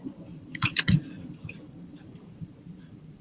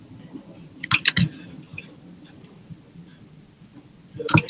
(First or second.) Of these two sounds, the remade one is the first